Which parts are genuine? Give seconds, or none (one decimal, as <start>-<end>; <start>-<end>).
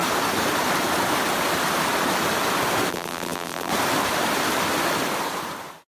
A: 0.0-2.9; 3.7-5.9